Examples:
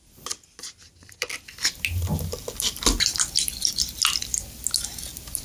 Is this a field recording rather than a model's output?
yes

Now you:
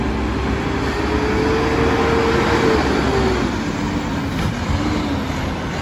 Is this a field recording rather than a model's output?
yes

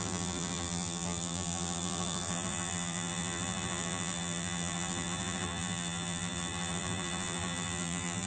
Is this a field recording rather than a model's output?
no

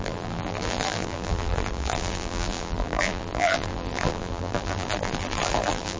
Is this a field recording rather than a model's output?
no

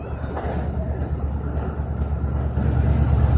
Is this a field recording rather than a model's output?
yes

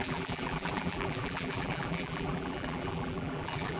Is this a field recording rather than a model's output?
no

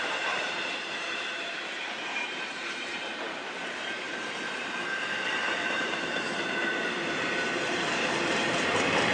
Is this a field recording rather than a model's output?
no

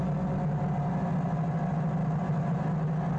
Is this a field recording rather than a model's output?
yes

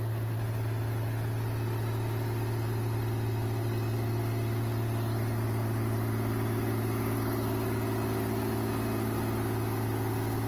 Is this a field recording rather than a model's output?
yes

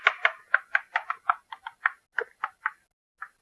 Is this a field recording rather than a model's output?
yes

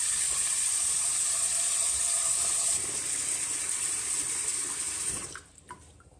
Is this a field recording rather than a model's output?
no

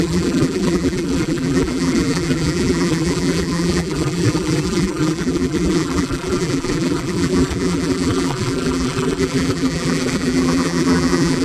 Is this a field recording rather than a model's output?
no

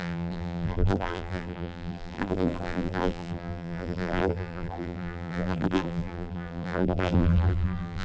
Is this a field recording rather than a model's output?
no